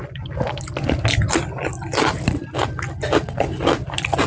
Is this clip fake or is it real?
real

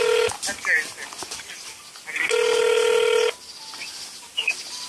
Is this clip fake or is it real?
real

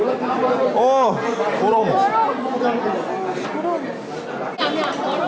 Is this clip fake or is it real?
real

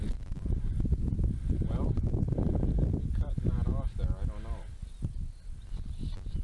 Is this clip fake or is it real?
real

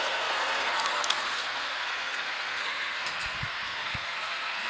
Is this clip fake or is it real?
fake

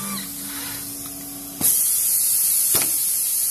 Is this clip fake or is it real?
real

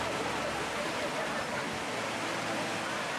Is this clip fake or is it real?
real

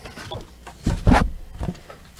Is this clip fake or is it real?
real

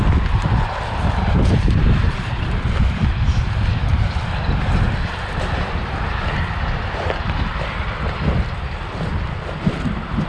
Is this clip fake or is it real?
fake